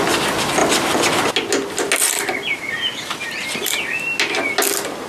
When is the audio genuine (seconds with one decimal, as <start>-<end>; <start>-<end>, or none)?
0.0-0.6; 1.3-2.0; 3.4-5.1